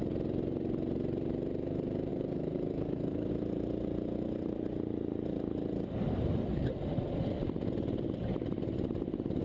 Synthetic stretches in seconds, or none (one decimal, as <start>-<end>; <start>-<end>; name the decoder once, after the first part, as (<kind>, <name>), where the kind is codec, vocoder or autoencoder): 2.1-3.3 (codec, DAC)